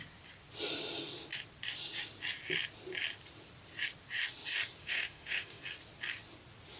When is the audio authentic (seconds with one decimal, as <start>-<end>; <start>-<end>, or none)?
0.0-4.8; 5.6-6.8